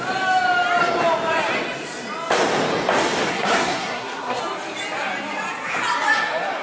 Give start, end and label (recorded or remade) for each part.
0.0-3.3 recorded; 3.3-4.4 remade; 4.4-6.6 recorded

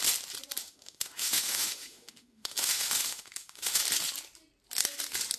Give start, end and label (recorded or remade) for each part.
0.0-0.6 recorded; 0.6-3.8 remade; 3.8-5.4 recorded

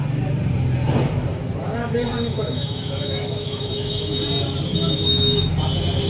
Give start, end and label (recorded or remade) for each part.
0.0-1.8 recorded; 1.8-4.2 remade; 4.2-4.7 recorded; 4.7-5.5 remade; 5.5-6.1 recorded

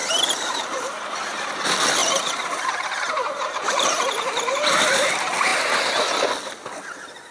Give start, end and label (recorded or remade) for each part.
0.0-1.2 remade; 1.2-2.0 recorded; 2.0-5.1 remade; 5.1-7.3 recorded

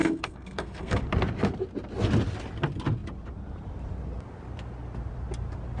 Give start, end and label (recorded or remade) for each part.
0.0-1.0 remade; 1.0-5.8 recorded

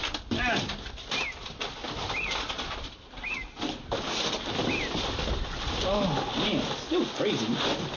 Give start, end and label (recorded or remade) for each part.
0.0-8.0 recorded

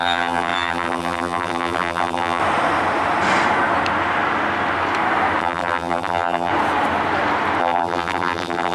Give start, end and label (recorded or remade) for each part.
0.0-2.4 remade; 2.4-5.4 recorded; 5.4-6.5 remade; 6.5-7.6 recorded; 7.6-8.7 remade